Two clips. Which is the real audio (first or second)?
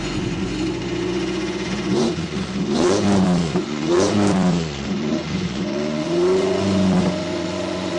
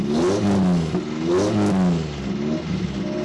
second